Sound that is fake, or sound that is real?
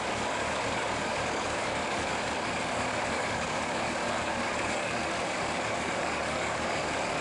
fake